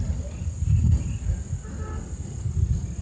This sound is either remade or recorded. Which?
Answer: recorded